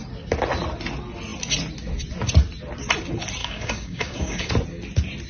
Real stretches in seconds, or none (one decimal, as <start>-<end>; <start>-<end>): 0.0-3.4; 4.5-5.3